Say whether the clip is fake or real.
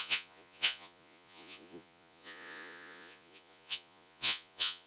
fake